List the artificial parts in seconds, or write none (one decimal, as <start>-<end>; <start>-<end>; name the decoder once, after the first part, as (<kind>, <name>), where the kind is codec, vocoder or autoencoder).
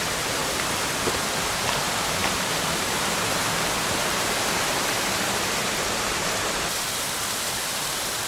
0.0-0.4 (vocoder, BigVGAN v2); 1.1-8.3